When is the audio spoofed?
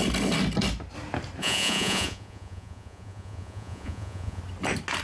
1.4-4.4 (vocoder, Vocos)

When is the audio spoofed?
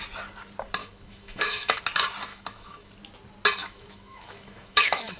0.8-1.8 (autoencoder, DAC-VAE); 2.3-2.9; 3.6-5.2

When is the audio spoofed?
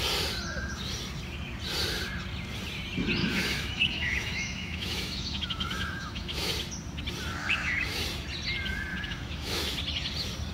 3.2-6.5 (autoencoder, DAC-VAE); 7.4-8.0; 8.9-9.7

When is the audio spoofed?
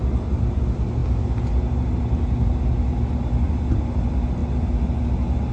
none